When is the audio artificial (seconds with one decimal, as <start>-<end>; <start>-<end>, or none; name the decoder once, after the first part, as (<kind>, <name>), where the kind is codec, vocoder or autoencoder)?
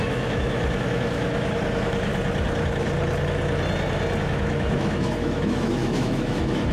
0.0-2.1 (autoencoder, DAC-VAE); 4.2-6.7